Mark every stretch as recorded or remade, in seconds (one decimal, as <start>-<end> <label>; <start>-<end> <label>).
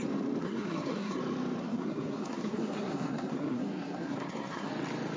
0.0-0.4 recorded; 0.4-1.2 remade; 1.2-1.6 recorded; 1.6-4.7 remade; 4.7-5.2 recorded